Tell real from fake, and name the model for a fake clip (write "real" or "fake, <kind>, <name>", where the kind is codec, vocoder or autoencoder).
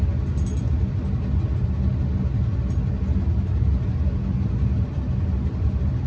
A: real